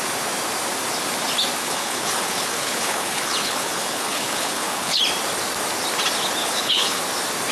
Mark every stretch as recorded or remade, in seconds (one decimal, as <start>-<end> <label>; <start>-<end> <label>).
0.0-1.6 recorded; 1.6-5.0 remade; 5.0-6.4 recorded; 6.4-7.0 remade; 7.0-7.5 recorded